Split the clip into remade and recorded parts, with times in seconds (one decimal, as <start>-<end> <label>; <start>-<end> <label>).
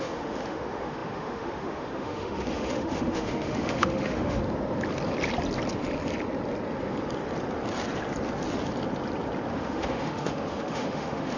0.0-4.4 remade; 4.4-9.5 recorded; 9.5-11.4 remade